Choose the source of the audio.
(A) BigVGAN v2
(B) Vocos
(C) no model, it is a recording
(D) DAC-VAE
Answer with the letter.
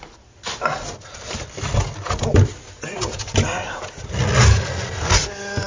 C